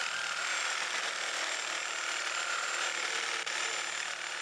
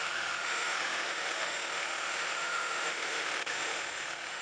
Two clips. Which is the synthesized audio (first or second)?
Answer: second